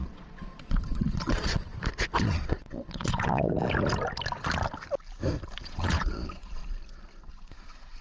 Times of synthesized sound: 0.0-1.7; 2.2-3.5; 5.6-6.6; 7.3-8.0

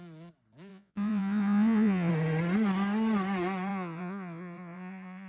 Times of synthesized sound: 0.7-2.1; 3.7-5.3

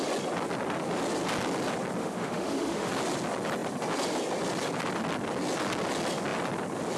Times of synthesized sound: 2.0-2.9

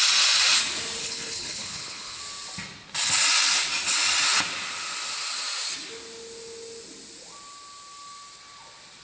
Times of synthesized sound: 1.0-2.2

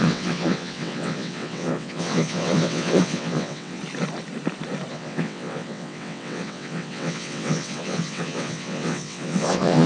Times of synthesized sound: 0.0-3.8; 4.9-9.9

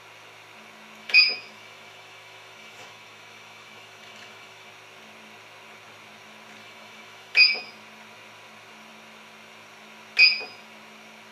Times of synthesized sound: 1.0-4.7; 6.6-7.7